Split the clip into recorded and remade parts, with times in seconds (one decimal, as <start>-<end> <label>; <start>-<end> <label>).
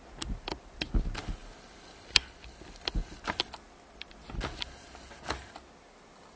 0.0-6.4 recorded